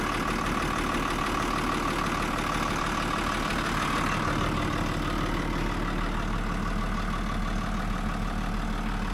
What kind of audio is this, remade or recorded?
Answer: recorded